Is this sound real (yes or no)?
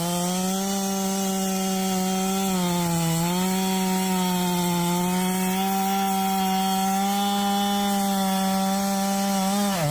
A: yes